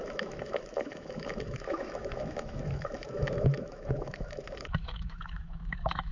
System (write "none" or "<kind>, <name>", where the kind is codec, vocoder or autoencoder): autoencoder, DAC-VAE